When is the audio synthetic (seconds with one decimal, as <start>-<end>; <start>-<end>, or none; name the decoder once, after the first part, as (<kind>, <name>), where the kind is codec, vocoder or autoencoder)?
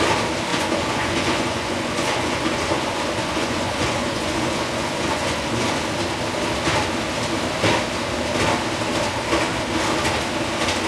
0.5-5.8 (vocoder, Vocos)